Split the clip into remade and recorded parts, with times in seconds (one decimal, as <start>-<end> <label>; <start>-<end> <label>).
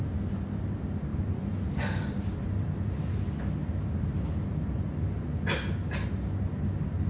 0.0-7.1 recorded